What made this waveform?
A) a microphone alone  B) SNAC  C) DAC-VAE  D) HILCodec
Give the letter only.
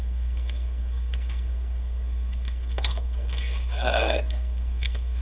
B